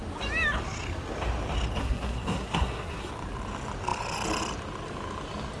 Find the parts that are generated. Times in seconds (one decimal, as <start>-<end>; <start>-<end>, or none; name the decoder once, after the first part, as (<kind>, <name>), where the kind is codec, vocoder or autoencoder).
1.8-3.1 (codec, SNAC)